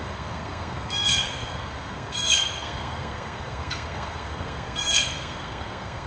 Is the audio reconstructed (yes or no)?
yes